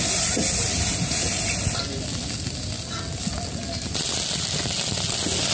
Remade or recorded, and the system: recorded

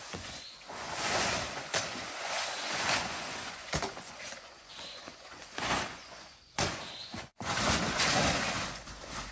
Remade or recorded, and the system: remade, vocoder, Vocos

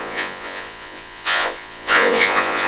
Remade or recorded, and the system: remade, vocoder, Vocos